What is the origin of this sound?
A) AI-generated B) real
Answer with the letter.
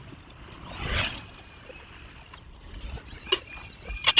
B